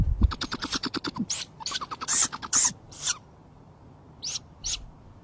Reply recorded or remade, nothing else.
remade